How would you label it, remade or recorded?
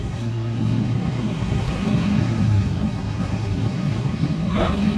remade